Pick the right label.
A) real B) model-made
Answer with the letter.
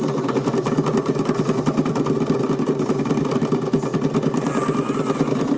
A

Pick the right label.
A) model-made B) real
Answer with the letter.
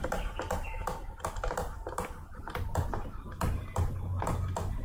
A